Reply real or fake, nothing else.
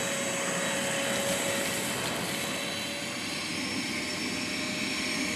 real